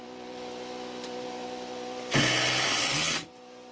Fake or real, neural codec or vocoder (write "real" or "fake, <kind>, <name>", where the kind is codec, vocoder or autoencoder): fake, vocoder, BigVGAN v2